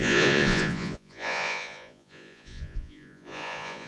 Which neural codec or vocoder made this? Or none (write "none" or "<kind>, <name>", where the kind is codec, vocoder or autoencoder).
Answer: vocoder, Vocos